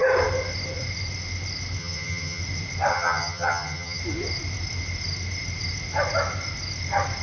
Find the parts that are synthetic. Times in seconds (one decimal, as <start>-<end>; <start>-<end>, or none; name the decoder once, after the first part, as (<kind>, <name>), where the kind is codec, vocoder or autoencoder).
1.8-2.4 (vocoder, HiFi-GAN); 2.9-4.0

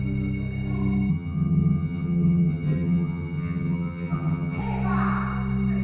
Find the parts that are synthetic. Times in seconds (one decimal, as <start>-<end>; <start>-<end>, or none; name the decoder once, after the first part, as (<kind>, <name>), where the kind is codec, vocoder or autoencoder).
1.1-4.6 (vocoder, HiFi-GAN)

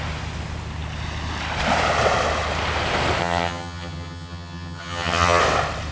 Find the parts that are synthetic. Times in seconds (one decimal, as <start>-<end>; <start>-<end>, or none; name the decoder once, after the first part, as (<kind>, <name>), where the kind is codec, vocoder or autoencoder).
3.2-5.4 (vocoder, HiFi-GAN)

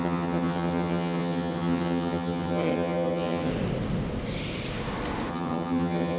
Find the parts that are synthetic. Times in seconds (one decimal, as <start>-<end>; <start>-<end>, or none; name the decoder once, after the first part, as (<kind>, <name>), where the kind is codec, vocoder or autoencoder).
0.0-3.5 (vocoder, HiFi-GAN); 5.3-6.2

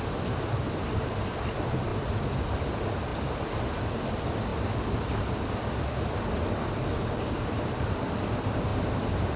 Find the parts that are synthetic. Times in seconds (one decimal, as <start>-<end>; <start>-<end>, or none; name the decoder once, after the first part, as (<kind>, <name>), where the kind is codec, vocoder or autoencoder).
none

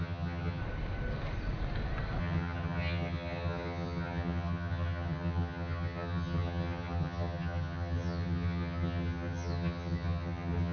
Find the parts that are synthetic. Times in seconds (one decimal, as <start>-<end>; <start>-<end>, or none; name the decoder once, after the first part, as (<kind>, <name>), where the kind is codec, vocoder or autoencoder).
0.0-0.6 (vocoder, HiFi-GAN); 2.2-10.7

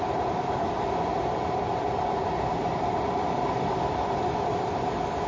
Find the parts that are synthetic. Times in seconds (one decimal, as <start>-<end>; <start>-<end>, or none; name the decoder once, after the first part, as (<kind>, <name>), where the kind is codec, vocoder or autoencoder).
none

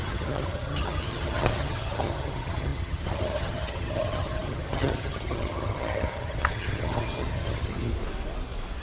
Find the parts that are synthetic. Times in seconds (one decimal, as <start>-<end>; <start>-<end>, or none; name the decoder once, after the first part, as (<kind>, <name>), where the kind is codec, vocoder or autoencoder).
0.0-7.9 (vocoder, HiFi-GAN)